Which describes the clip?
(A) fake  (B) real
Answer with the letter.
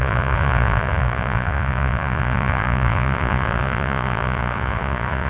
A